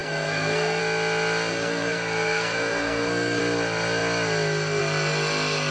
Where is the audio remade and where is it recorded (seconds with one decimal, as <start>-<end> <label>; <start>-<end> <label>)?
0.0-0.8 remade; 0.8-1.5 recorded; 1.5-3.4 remade; 3.4-5.7 recorded